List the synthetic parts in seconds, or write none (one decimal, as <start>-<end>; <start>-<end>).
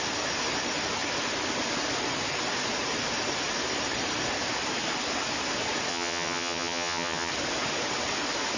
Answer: 5.9-7.3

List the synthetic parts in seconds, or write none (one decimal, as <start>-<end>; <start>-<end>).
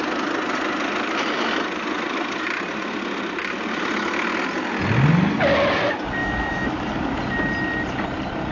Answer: 6.2-6.9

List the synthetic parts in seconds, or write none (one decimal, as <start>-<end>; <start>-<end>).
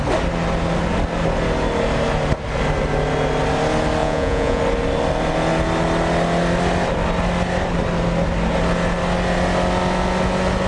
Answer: 4.0-4.6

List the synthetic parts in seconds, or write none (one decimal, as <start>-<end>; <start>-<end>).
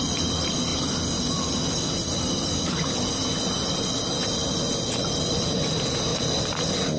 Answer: 0.0-0.7; 4.9-7.0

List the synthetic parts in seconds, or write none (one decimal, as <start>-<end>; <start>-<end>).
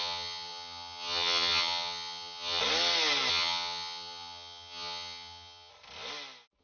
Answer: 0.0-2.6; 3.3-5.7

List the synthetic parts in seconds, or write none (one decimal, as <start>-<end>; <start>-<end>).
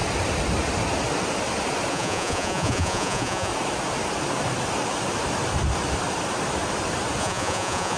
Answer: 1.9-3.5; 7.2-8.0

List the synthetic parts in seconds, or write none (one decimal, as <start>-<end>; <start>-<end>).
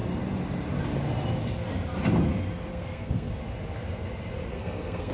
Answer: 2.7-3.3; 4.5-5.1